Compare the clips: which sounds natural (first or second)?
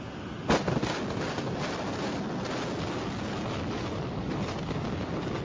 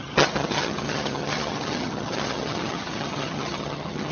first